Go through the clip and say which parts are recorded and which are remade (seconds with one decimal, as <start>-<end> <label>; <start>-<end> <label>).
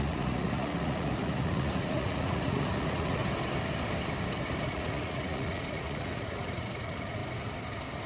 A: 0.0-3.2 remade; 3.2-4.7 recorded; 4.7-7.2 remade; 7.2-8.1 recorded